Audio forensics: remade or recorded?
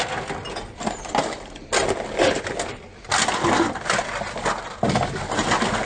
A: recorded